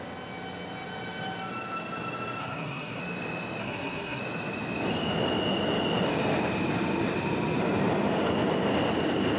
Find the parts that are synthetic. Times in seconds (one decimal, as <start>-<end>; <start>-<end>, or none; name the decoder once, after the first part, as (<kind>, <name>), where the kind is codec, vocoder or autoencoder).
2.4-3.0 (codec, SNAC); 3.6-4.2